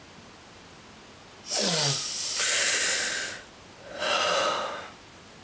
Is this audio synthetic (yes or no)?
no